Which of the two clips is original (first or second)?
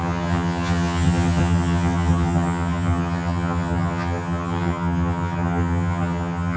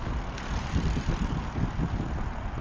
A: second